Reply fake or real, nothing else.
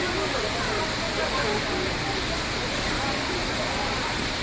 real